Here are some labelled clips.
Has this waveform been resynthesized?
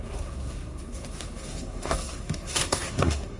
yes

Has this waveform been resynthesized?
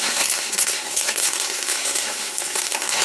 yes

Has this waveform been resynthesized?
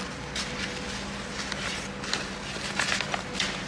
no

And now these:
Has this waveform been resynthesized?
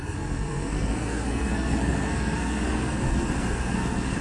yes